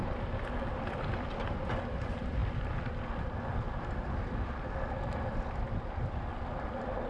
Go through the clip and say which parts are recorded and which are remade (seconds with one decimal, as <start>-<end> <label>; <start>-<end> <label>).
0.0-0.7 recorded; 0.7-7.1 remade